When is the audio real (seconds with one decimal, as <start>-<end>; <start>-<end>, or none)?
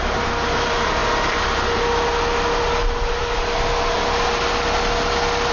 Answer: 0.0-5.5